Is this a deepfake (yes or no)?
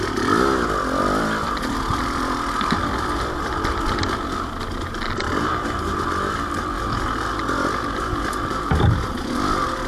yes